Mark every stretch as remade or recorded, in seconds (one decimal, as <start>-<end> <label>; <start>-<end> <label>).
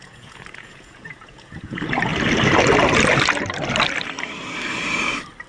0.0-2.1 remade; 2.1-5.5 recorded